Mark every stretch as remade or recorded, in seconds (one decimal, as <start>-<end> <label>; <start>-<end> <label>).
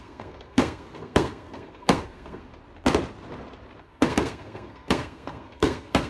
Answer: 0.0-2.5 remade; 2.5-3.8 recorded; 3.8-6.1 remade